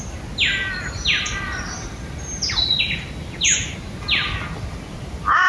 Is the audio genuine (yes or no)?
yes